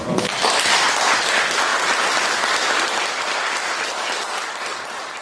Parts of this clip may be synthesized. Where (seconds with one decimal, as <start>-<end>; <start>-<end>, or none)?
none